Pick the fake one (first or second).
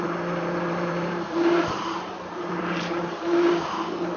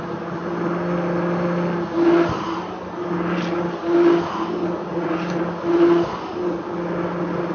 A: first